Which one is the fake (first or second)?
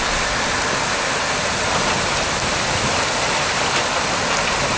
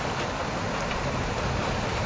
first